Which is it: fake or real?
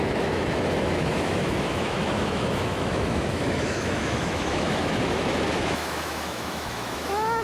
fake